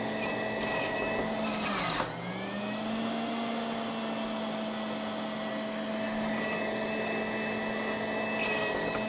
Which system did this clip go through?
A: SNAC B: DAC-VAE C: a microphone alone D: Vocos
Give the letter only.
C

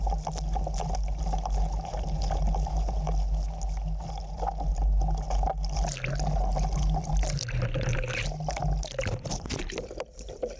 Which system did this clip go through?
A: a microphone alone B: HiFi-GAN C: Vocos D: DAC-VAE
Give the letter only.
A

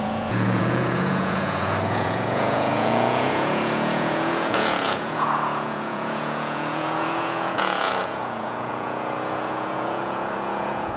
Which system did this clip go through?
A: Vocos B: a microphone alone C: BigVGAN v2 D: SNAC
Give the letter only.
A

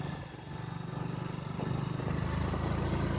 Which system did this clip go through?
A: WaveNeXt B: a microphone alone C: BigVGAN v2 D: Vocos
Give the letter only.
B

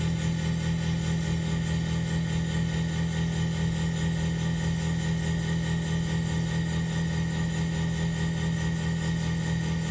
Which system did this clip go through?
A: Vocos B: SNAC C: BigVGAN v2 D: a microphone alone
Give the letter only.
D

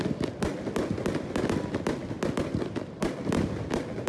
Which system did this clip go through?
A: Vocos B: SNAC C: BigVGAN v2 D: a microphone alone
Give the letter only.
D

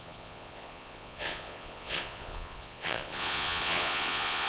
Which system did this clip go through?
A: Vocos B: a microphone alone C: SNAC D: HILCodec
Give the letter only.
A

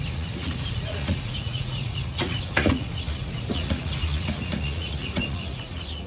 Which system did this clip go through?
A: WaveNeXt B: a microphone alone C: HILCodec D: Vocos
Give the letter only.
D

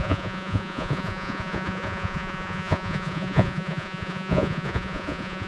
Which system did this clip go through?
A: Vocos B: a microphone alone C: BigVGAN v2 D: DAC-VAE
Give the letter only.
A